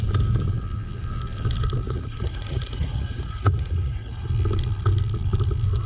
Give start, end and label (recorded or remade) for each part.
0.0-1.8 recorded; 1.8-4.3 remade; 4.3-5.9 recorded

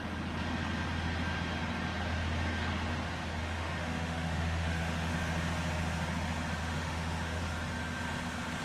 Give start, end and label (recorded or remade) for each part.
0.0-3.4 recorded; 3.4-5.1 remade; 5.1-6.6 recorded; 6.6-7.4 remade; 7.4-8.6 recorded

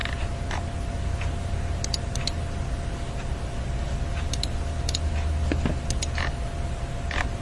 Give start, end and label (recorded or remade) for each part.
0.0-7.4 recorded

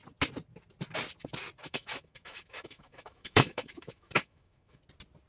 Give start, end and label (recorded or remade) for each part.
0.0-1.6 recorded; 1.6-4.8 remade; 4.8-5.3 recorded

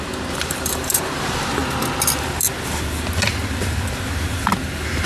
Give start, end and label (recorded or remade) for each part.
0.0-1.6 remade; 1.6-5.1 recorded